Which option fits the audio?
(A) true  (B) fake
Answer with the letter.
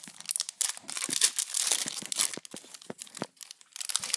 A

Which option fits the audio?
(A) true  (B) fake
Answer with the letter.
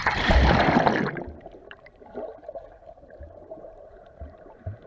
B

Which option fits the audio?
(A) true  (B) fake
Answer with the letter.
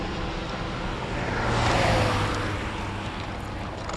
A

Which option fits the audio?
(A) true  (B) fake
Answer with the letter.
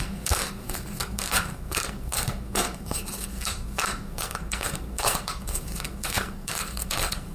B